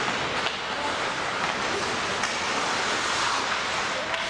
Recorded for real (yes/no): yes